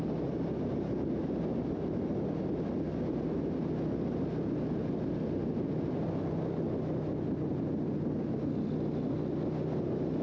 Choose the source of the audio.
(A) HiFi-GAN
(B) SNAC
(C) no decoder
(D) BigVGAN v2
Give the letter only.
C